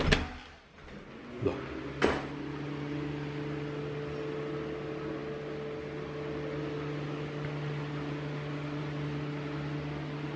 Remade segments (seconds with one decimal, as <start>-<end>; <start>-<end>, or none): none